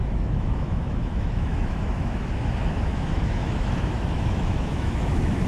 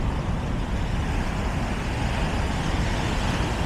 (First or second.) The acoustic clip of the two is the second